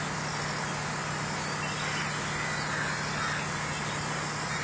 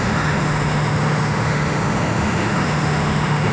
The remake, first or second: second